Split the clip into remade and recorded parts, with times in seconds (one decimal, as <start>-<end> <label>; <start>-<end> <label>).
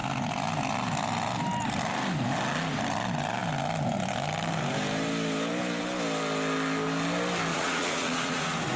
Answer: 0.0-7.5 recorded; 7.5-8.8 remade